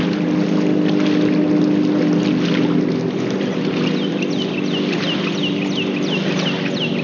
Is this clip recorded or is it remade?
recorded